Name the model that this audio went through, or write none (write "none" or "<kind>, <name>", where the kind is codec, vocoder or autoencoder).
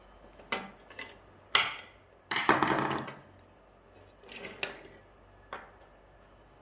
none